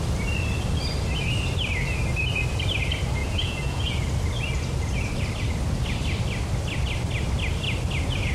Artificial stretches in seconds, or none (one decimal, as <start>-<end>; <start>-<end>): 3.2-4.0